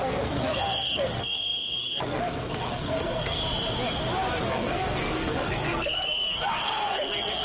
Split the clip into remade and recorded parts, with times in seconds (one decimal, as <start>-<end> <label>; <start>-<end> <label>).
0.0-3.4 remade; 3.4-4.4 recorded; 4.4-7.4 remade